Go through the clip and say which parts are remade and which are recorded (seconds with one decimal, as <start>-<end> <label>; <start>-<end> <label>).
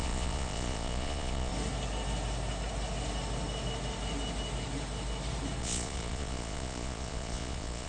0.0-1.5 remade; 1.5-5.6 recorded; 5.6-7.9 remade